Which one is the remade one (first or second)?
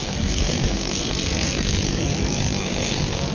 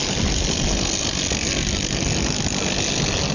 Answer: first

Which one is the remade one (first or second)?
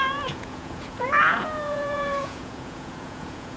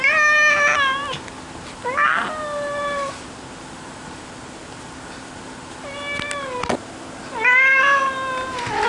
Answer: first